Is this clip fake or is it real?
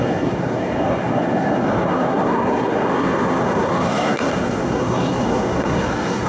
fake